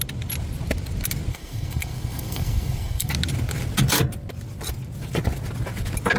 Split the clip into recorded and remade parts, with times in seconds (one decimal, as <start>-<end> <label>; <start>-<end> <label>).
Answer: 0.0-1.3 recorded; 1.3-3.1 remade; 3.1-6.2 recorded